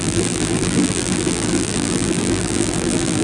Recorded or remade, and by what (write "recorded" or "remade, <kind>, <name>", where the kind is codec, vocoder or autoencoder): remade, vocoder, BigVGAN v2